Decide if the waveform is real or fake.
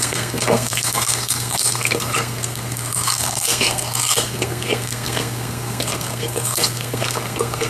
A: fake